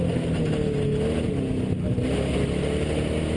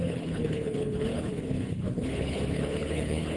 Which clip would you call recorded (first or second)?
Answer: first